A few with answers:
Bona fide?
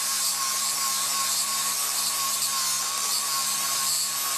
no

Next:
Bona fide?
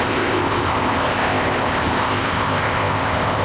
no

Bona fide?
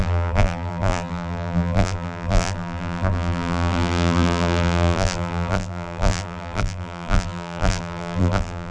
no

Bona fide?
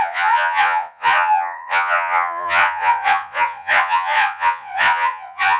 no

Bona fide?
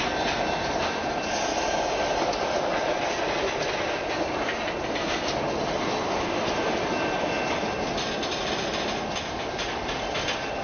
yes